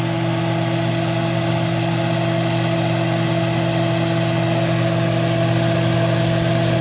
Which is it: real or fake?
real